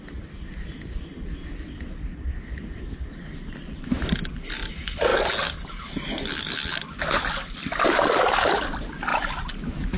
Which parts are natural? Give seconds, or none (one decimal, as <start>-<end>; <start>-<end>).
0.0-10.0

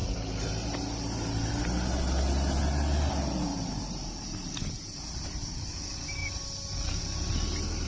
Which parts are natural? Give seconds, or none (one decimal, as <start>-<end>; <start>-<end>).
0.0-7.9

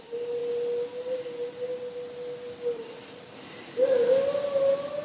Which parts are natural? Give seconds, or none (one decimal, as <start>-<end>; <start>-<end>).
0.0-5.0

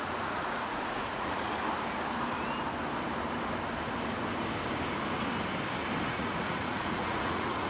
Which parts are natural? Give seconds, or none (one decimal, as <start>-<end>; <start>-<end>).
1.5-6.1

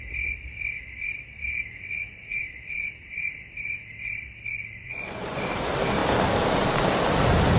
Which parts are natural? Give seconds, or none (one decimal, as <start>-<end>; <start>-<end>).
0.0-1.7; 2.4-4.8; 5.4-7.6